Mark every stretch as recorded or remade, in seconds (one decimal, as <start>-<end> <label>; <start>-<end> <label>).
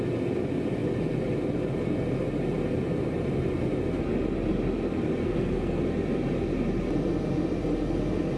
0.0-5.2 recorded; 5.2-5.8 remade; 5.8-8.4 recorded